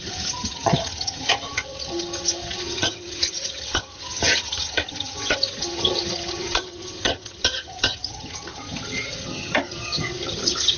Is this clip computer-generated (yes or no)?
yes